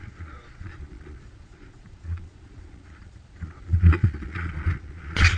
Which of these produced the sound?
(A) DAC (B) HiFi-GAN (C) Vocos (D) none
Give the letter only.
C